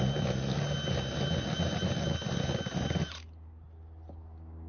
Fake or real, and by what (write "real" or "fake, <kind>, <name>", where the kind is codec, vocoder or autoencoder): real